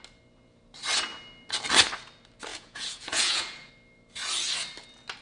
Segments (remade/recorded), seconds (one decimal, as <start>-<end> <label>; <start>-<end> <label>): 0.0-2.5 recorded; 2.5-3.7 remade; 3.7-5.2 recorded